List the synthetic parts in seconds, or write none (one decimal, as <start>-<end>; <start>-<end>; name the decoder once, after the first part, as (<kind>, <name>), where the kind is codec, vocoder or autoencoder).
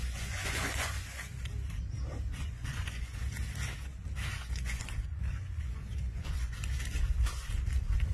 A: 0.0-1.3 (vocoder, Vocos); 2.4-3.2; 4.3-6.6